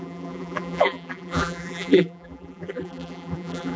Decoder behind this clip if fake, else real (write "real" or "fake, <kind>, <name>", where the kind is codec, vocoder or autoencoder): fake, vocoder, BigVGAN v2